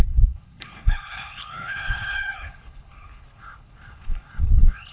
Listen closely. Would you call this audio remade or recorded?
remade